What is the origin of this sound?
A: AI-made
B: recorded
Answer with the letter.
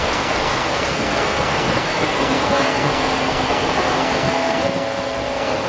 A